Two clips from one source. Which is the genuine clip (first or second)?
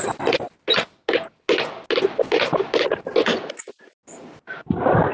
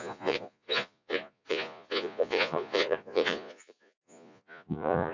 first